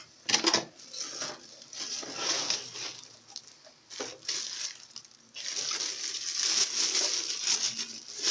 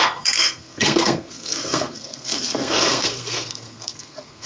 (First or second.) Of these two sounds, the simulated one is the second